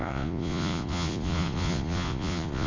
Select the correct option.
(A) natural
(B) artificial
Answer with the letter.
B